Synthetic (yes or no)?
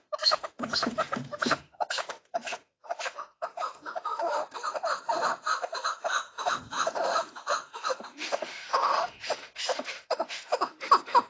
yes